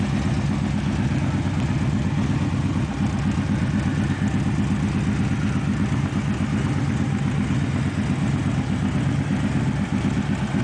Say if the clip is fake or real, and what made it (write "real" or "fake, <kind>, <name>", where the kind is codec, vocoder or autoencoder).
real